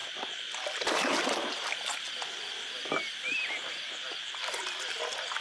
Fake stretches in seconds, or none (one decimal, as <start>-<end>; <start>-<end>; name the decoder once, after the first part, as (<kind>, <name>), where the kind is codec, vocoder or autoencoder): 0.0-2.4 (vocoder, BigVGAN v2)